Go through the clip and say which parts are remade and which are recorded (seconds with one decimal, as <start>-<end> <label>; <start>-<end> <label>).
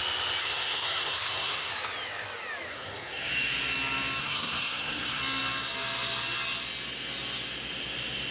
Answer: 0.0-0.4 recorded; 0.4-1.7 remade; 1.7-2.7 recorded; 2.7-3.3 remade; 3.3-4.2 recorded; 4.2-5.2 remade; 5.2-8.3 recorded